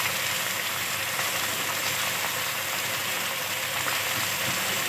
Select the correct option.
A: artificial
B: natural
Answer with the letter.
B